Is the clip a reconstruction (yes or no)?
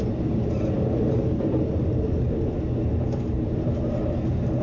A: no